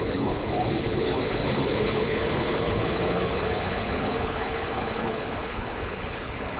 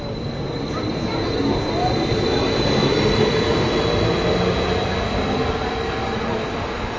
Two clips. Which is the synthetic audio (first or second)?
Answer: first